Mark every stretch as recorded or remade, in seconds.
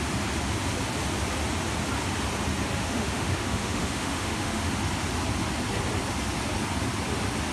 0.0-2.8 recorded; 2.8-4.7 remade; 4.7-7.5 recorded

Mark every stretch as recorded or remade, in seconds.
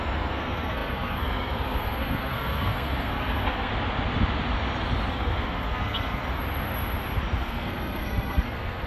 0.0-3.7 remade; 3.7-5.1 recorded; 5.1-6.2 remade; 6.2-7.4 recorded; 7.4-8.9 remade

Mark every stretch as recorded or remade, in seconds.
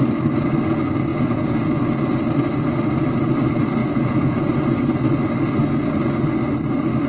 0.0-1.1 recorded; 1.1-1.6 remade; 1.6-3.8 recorded; 3.8-4.8 remade; 4.8-7.1 recorded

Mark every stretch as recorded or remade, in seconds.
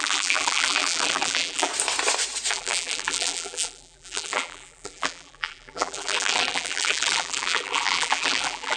0.0-1.7 remade; 1.7-2.5 recorded; 2.5-8.8 remade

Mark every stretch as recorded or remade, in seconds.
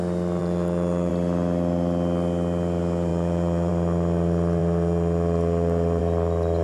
0.0-0.4 recorded; 0.4-1.1 remade; 1.1-3.1 recorded; 3.1-3.7 remade; 3.7-4.6 recorded; 4.6-6.0 remade; 6.0-6.6 recorded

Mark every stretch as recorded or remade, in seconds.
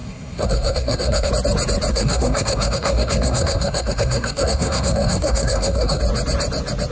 0.0-1.3 remade; 1.3-1.9 recorded; 1.9-6.0 remade; 6.0-6.9 recorded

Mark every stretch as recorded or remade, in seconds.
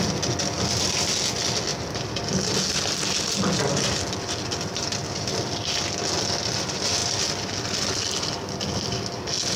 0.0-9.6 recorded